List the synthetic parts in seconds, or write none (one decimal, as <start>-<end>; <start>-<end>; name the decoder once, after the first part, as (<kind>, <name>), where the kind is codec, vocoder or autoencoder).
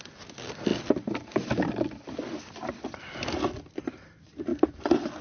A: none